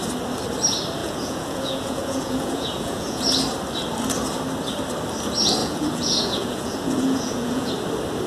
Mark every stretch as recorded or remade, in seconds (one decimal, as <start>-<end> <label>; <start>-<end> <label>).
0.0-1.0 recorded; 1.0-3.2 remade; 3.2-5.6 recorded; 5.6-7.7 remade; 7.7-8.3 recorded